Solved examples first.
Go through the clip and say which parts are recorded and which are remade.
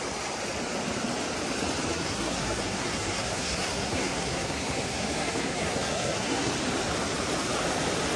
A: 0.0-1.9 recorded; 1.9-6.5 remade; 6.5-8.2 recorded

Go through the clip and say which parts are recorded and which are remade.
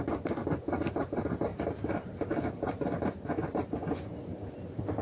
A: 0.0-5.0 recorded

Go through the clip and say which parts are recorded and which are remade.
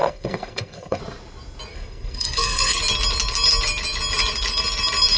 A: 0.0-1.0 remade; 1.0-1.7 recorded; 1.7-2.8 remade; 2.8-5.2 recorded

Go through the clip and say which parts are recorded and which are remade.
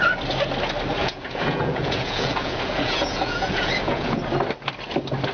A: 0.0-1.0 recorded; 1.0-4.2 remade; 4.2-5.3 recorded